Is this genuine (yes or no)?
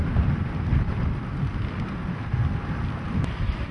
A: yes